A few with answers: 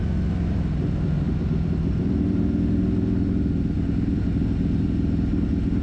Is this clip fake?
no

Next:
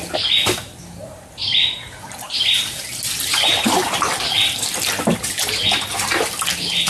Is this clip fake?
no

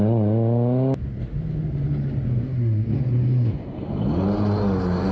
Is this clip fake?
no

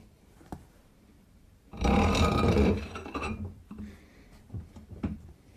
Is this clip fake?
yes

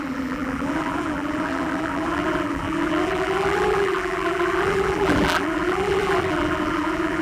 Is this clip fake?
yes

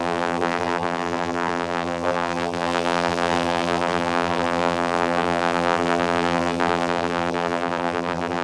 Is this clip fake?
yes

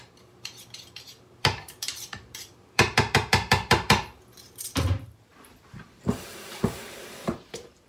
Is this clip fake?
yes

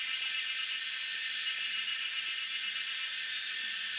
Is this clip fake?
yes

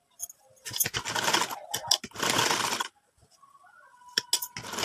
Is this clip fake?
no